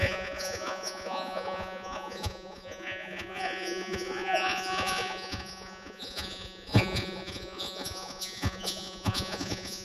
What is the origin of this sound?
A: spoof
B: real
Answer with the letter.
A